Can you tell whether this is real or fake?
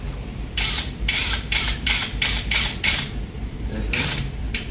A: fake